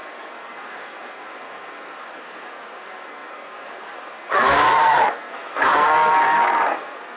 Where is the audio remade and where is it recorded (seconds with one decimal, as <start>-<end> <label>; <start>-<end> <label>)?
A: 0.0-7.2 remade